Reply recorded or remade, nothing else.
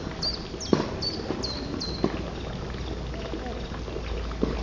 recorded